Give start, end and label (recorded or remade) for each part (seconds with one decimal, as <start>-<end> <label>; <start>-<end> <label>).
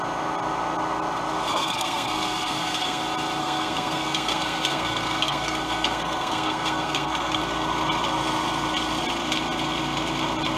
0.0-1.5 recorded; 1.5-3.0 remade; 3.0-3.4 recorded; 3.4-7.4 remade; 7.4-10.6 recorded